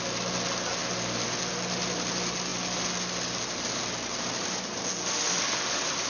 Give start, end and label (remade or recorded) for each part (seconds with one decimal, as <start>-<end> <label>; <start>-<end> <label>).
0.0-6.1 recorded